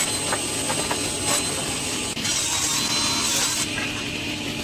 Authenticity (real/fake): real